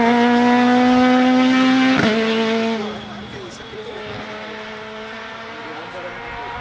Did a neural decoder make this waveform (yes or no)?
no